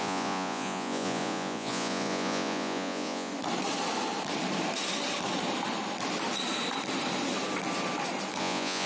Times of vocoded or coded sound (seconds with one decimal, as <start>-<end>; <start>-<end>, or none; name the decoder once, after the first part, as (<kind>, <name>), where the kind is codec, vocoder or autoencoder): 0.0-3.3 (vocoder, Vocos); 8.4-8.9